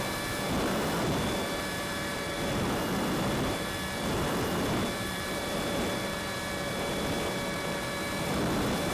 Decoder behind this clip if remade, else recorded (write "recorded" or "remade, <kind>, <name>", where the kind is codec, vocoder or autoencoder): remade, vocoder, BigVGAN v2